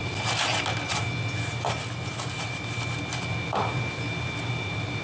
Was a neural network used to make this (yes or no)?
yes